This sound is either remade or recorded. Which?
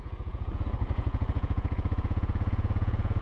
remade